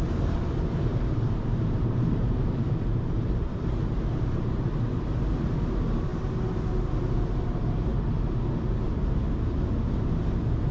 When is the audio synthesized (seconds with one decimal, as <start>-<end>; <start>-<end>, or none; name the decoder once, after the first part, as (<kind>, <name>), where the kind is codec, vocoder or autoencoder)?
0.9-4.8 (vocoder, BigVGAN v2)